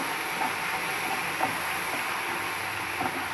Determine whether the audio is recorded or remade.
recorded